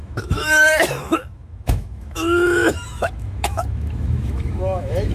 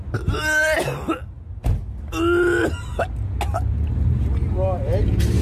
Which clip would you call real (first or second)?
second